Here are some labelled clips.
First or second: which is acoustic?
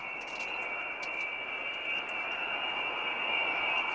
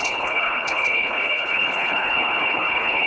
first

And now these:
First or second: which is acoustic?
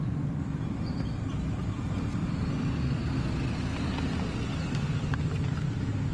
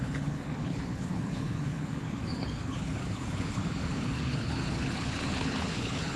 first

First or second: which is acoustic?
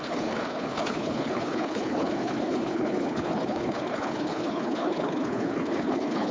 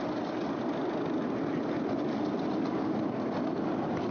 second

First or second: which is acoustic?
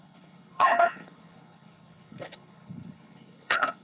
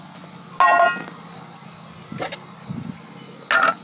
second